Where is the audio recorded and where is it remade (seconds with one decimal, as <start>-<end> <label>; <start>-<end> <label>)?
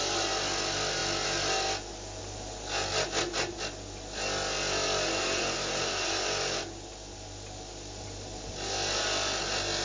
0.0-9.8 recorded